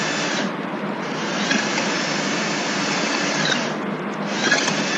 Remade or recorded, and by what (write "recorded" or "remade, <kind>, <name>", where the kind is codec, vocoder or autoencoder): recorded